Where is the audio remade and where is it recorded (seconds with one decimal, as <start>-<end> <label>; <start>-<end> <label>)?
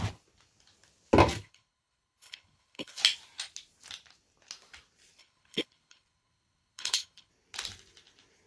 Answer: 0.0-1.4 recorded; 1.4-3.0 remade; 3.0-5.2 recorded; 5.2-7.3 remade; 7.3-8.5 recorded